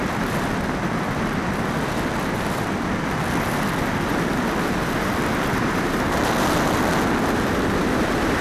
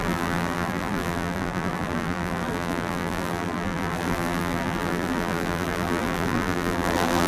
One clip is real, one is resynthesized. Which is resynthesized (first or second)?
second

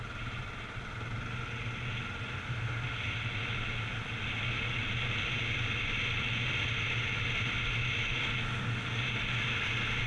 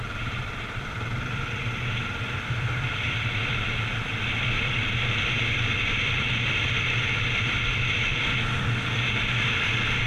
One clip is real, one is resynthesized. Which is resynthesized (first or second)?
second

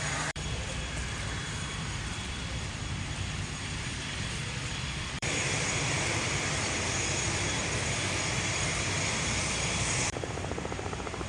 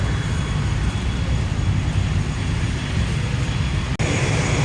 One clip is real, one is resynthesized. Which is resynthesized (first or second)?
first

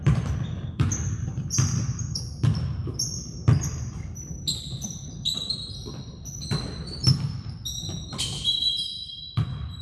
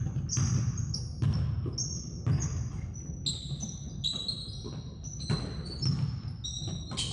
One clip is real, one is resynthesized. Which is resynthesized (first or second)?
first